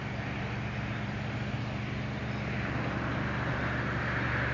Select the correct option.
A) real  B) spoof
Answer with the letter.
A